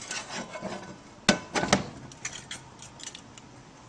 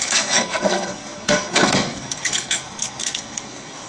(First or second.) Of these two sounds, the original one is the first